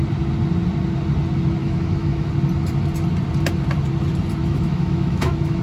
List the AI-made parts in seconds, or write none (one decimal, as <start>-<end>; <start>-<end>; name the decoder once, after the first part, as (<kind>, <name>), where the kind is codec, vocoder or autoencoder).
1.6-2.3 (autoencoder, DAC-VAE); 4.4-5.6